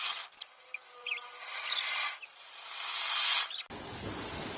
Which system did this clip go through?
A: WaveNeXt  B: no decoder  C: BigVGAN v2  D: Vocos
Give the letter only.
B